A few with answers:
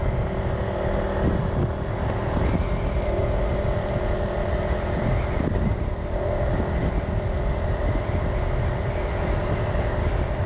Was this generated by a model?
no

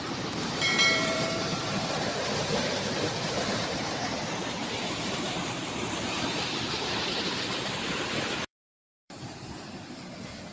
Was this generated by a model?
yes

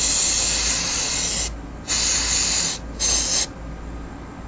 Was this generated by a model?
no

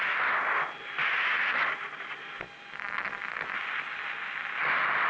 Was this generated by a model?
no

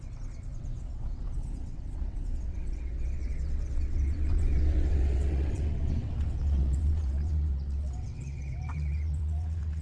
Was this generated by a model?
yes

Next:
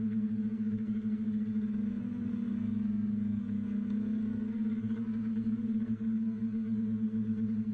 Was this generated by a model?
yes